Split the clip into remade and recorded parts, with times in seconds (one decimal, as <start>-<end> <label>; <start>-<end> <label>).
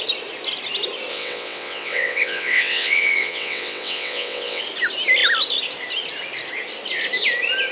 0.0-1.1 recorded; 1.1-4.6 remade; 4.6-7.7 recorded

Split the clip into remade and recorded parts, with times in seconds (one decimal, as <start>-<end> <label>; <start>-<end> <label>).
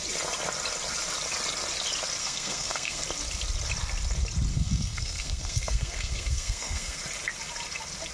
0.0-2.2 recorded; 2.2-3.0 remade; 3.0-4.5 recorded; 4.5-7.0 remade; 7.0-8.1 recorded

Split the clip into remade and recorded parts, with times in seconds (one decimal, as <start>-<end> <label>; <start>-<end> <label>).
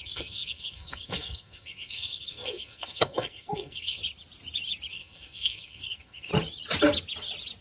0.0-4.0 remade; 4.0-4.9 recorded; 4.9-6.3 remade; 6.3-7.6 recorded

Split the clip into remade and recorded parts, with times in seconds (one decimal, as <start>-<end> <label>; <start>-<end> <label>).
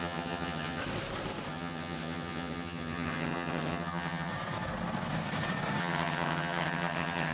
0.0-0.8 remade; 0.8-1.5 recorded; 1.5-4.3 remade; 4.3-5.8 recorded; 5.8-7.3 remade